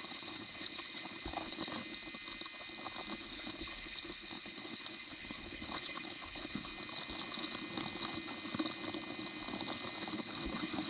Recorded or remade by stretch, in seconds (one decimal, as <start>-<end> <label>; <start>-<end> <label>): 0.0-1.8 remade; 1.8-3.2 recorded; 3.2-6.7 remade; 6.7-10.1 recorded; 10.1-10.9 remade